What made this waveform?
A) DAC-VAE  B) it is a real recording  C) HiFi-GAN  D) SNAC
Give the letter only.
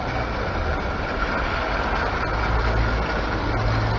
B